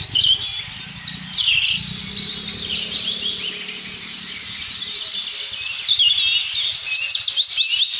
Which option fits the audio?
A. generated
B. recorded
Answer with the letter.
B